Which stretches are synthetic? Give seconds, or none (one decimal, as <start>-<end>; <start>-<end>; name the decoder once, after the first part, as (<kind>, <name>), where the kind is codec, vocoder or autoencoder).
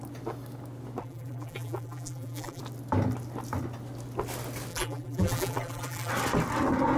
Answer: 1.0-2.6 (vocoder, BigVGAN v2); 4.7-6.1